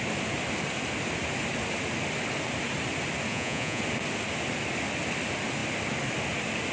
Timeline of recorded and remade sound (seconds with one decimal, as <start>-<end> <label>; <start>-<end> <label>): 0.0-3.3 recorded; 3.3-3.8 remade; 3.8-6.7 recorded